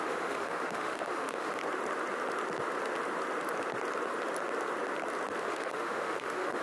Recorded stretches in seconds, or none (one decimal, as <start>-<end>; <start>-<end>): 1.6-5.4